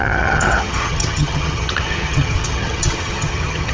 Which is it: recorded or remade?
remade